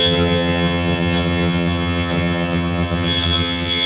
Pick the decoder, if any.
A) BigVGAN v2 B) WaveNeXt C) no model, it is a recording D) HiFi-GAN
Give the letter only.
D